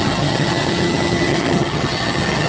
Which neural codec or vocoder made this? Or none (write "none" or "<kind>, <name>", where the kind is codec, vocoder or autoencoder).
vocoder, HiFi-GAN